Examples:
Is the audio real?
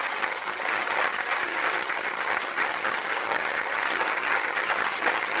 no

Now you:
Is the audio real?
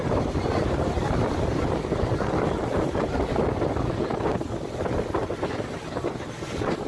yes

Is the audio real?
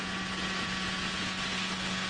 no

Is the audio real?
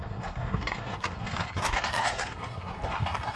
no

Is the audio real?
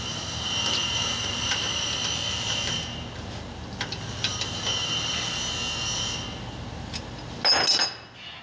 yes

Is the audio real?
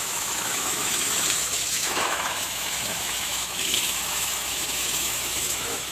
no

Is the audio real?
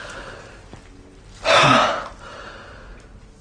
yes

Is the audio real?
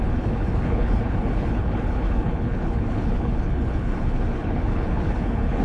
no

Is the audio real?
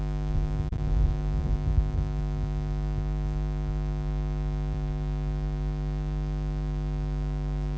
no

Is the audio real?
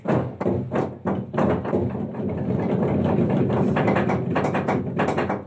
yes